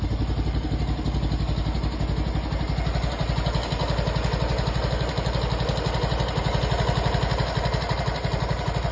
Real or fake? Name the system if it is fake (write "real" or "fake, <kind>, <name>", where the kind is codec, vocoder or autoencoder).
real